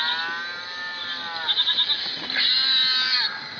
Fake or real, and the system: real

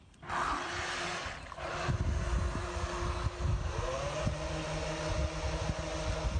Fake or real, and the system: real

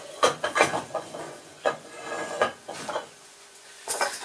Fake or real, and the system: fake, vocoder, Vocos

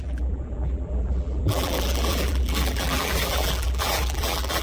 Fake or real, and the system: fake, vocoder, BigVGAN v2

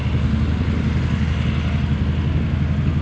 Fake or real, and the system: real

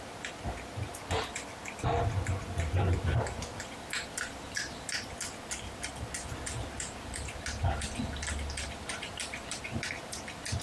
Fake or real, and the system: real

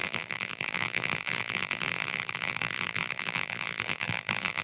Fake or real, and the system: fake, vocoder, BigVGAN v2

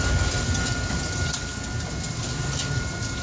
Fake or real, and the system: fake, vocoder, BigVGAN v2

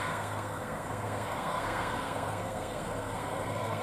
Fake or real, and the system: fake, codec, SNAC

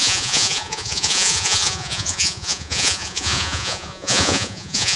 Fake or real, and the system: fake, vocoder, Vocos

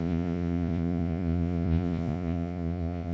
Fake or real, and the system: fake, vocoder, Vocos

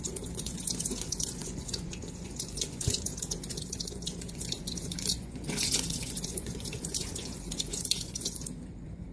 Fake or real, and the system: fake, vocoder, Vocos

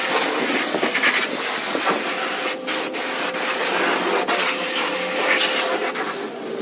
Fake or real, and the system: real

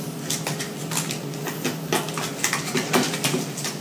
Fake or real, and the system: real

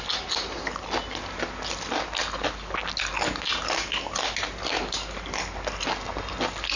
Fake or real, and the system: real